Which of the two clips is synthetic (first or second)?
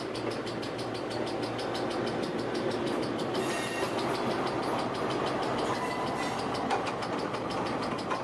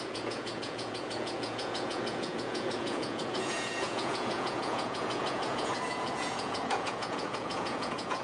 second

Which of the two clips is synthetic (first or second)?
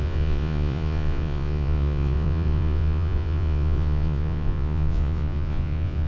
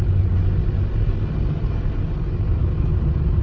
first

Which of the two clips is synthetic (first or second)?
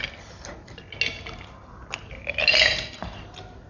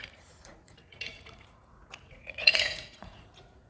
second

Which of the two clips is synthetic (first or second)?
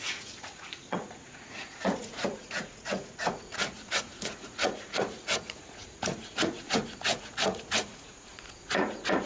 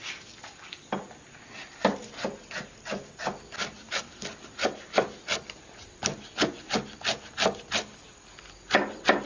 first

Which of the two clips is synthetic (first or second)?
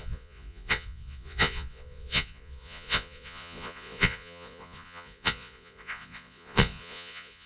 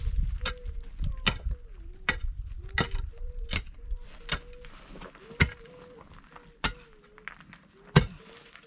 first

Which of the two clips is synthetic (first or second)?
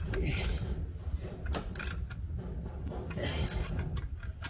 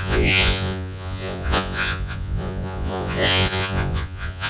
second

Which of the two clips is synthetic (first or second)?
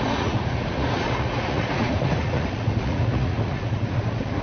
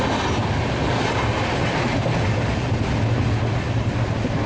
first